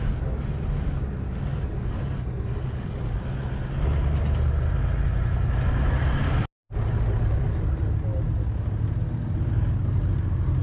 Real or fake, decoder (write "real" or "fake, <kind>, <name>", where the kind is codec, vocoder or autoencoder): real